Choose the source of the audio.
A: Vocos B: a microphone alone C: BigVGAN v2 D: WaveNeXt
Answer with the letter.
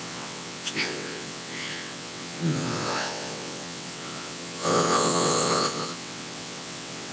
D